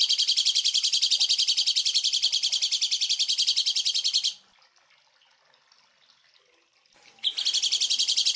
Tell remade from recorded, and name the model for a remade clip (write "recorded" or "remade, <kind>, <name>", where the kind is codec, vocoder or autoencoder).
recorded